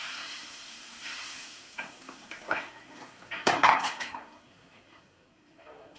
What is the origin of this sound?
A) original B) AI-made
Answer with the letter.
B